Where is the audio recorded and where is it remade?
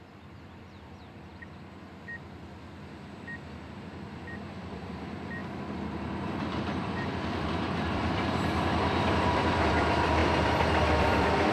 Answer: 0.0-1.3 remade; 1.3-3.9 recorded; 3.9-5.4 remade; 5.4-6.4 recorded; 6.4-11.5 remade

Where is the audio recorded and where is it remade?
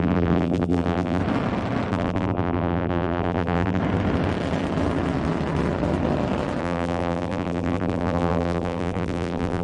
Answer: 0.0-1.2 remade; 1.2-1.9 recorded; 1.9-3.8 remade; 3.8-6.6 recorded; 6.6-9.6 remade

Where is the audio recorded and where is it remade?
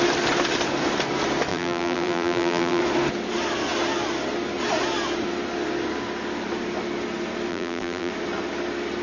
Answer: 0.0-1.5 recorded; 1.5-2.8 remade; 2.8-7.5 recorded; 7.5-8.1 remade; 8.1-9.0 recorded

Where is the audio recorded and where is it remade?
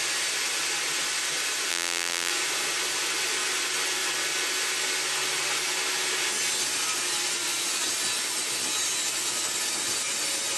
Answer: 0.0-1.7 recorded; 1.7-2.3 remade; 2.3-10.6 recorded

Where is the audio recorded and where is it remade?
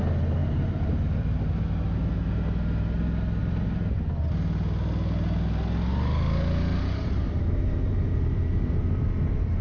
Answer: 0.0-0.4 recorded; 0.4-1.5 remade; 1.5-3.4 recorded; 3.4-4.0 remade; 4.0-6.7 recorded; 6.7-8.7 remade; 8.7-9.6 recorded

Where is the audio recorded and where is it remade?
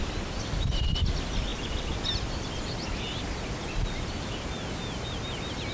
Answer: 0.0-5.7 recorded